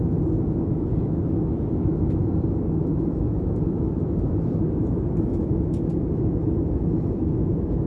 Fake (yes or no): yes